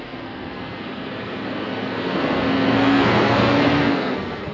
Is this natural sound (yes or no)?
no